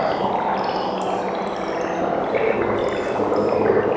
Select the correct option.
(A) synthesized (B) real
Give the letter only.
B